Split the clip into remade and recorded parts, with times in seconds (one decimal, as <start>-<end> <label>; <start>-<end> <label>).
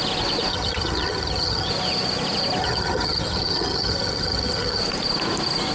0.0-0.5 recorded; 0.5-1.7 remade; 1.7-2.6 recorded; 2.6-4.8 remade; 4.8-5.7 recorded